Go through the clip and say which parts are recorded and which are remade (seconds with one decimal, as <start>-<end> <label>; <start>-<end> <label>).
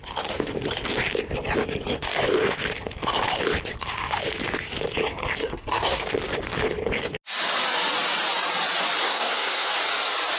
0.0-5.4 recorded; 5.4-6.0 remade; 6.0-9.0 recorded; 9.0-9.7 remade; 9.7-10.4 recorded